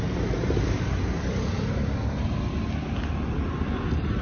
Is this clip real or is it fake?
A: real